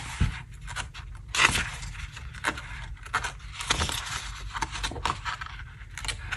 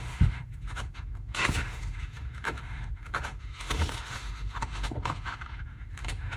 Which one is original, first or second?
first